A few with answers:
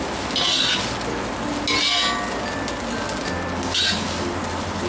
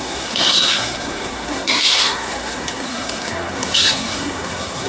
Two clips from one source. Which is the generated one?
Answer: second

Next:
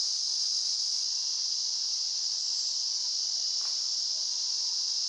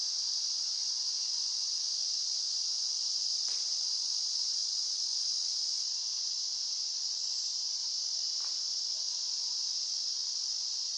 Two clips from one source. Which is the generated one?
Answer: second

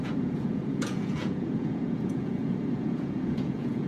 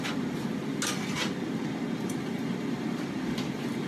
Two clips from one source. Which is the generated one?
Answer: first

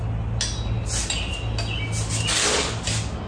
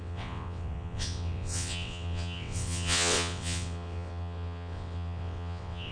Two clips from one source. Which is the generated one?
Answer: second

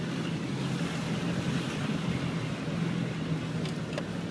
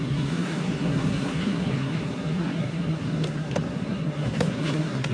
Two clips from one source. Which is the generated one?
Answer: second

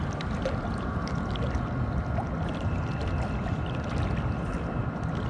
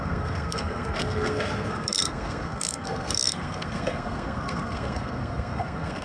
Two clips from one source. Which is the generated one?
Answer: second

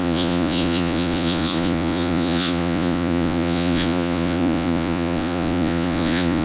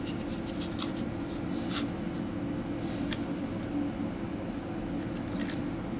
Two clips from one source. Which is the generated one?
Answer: first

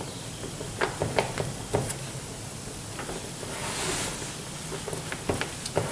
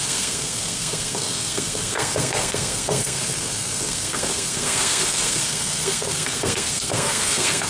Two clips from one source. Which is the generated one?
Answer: second